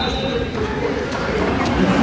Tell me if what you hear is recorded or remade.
recorded